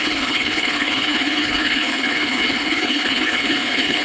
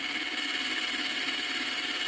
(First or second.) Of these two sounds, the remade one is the first